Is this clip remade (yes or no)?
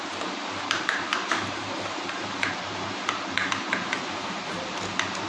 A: yes